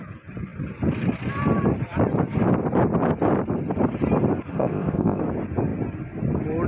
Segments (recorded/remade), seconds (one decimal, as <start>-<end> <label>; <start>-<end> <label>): 0.0-4.5 recorded; 4.5-5.2 remade; 5.2-6.7 recorded